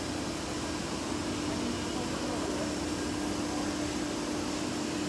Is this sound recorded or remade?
recorded